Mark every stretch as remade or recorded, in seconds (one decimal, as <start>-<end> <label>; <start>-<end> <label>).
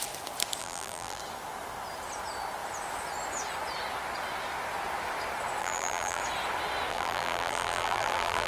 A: 0.0-0.6 recorded; 0.6-1.2 remade; 1.2-5.6 recorded; 5.6-6.2 remade; 6.2-6.9 recorded; 6.9-8.5 remade